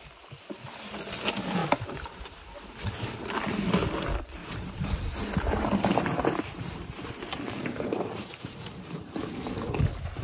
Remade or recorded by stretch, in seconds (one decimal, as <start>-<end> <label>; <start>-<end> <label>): 0.0-1.6 recorded; 1.6-2.2 remade; 2.2-4.4 recorded; 4.4-9.3 remade; 9.3-10.2 recorded